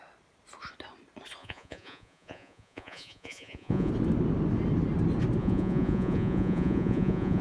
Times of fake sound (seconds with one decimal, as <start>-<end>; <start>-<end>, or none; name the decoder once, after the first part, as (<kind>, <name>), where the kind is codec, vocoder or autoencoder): 1.4-3.9 (vocoder, Vocos); 5.4-7.4